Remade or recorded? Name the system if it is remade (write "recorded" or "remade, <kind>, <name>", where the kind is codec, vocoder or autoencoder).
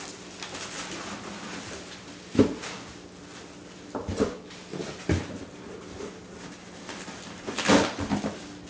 recorded